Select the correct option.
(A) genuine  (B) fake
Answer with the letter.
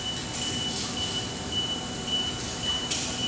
A